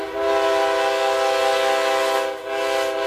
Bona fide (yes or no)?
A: yes